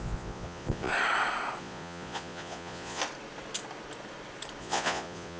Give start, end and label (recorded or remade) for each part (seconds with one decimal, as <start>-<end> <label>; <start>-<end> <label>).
0.0-0.9 remade; 0.9-1.6 recorded; 1.6-3.0 remade; 3.0-4.6 recorded; 4.6-5.4 remade